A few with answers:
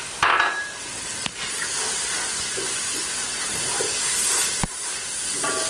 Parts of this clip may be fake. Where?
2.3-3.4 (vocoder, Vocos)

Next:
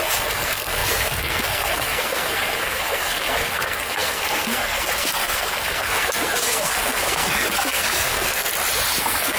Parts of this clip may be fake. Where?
0.0-8.5 (codec, SNAC); 9.0-9.4

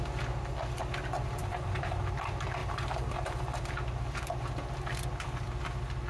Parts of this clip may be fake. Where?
1.4-2.0 (vocoder, BigVGAN v2); 2.6-3.7

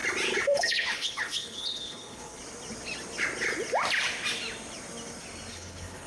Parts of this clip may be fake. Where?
0.6-2.4 (codec, HILCodec); 5.5-6.1